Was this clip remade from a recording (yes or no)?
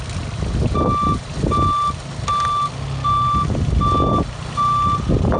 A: no